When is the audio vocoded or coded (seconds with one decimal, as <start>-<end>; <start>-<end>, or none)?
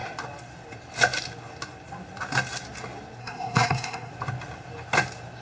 3.2-4.1